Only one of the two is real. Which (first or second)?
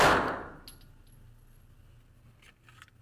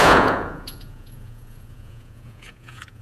first